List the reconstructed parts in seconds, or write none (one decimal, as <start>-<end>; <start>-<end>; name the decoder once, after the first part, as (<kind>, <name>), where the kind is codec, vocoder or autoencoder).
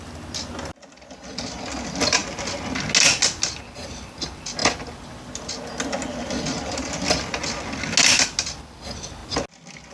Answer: none